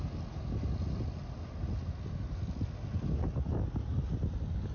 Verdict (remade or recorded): recorded